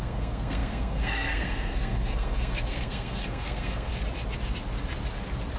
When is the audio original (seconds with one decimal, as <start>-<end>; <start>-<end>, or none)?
3.9-5.6